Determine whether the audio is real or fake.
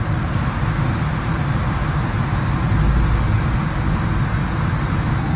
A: real